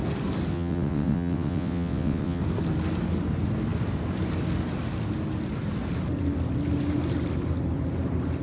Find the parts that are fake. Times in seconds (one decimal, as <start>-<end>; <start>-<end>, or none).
0.5-2.4

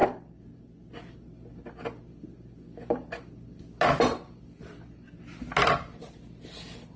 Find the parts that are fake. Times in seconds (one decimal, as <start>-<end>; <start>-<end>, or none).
none

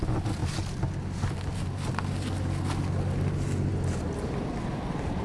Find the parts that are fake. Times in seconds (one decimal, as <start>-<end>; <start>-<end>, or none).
none

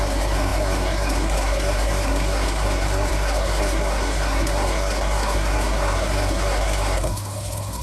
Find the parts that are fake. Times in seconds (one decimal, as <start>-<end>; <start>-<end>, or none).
0.0-7.8